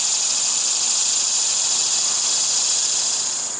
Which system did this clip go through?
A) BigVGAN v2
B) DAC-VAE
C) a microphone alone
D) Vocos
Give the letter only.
C